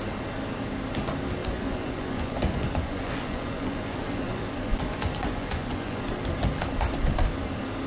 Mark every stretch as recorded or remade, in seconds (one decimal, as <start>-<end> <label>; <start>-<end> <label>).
0.0-1.4 recorded; 1.4-6.0 remade; 6.0-7.9 recorded